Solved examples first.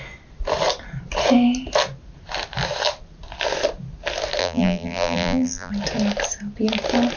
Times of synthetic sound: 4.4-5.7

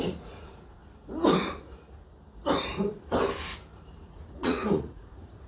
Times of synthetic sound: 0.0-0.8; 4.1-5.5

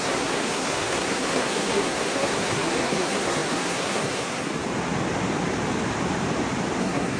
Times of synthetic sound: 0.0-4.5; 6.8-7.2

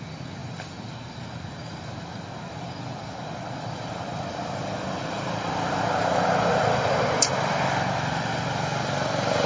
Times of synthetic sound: 0.4-2.4

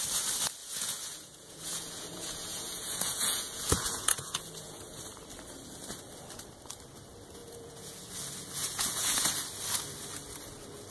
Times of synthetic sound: 0.6-5.0; 7.4-8.1; 8.6-9.3

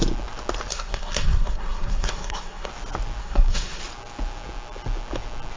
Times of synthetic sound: 0.7-2.7; 3.2-3.8

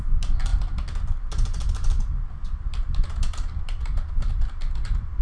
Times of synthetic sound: none

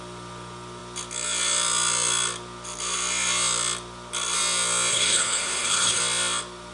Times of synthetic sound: 4.9-6.0